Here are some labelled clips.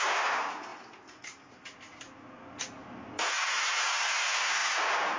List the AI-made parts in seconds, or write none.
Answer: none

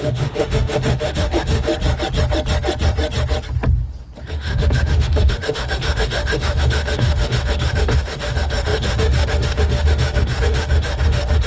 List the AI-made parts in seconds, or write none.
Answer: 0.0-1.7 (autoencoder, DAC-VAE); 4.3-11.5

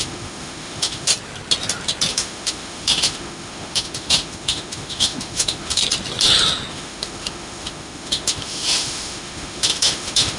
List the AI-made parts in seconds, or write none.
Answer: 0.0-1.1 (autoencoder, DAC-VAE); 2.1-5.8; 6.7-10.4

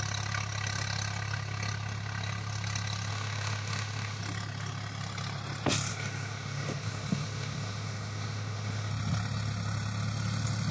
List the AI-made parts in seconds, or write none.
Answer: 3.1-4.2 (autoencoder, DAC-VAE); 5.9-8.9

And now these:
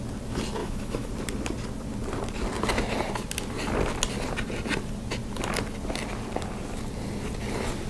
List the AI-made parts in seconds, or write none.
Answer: 0.6-1.1 (autoencoder, DAC-VAE)

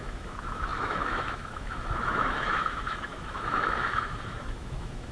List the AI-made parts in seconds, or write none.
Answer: 0.0-5.1 (autoencoder, DAC-VAE)